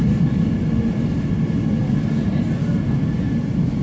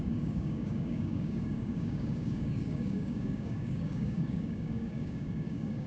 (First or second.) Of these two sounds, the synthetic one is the second